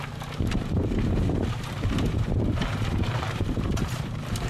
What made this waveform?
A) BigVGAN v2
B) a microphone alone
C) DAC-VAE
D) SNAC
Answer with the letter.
A